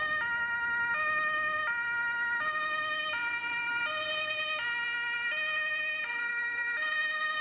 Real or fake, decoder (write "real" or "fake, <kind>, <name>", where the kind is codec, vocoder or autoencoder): real